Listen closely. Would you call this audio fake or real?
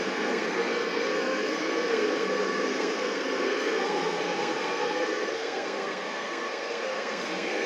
fake